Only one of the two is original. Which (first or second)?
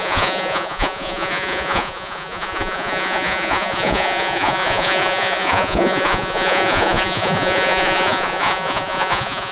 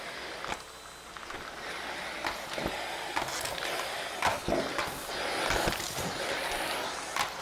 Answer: second